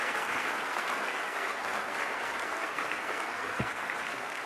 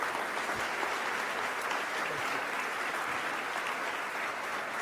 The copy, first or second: first